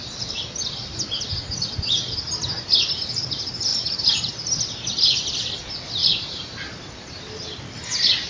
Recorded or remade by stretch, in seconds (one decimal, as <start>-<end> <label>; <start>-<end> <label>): 0.0-3.7 recorded; 3.7-4.3 remade; 4.3-6.0 recorded; 6.0-6.9 remade; 6.9-8.3 recorded